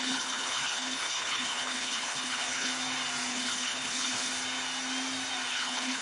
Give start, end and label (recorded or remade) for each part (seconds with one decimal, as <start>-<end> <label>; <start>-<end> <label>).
0.0-2.7 remade; 2.7-3.3 recorded; 3.3-4.3 remade; 4.3-5.5 recorded; 5.5-6.0 remade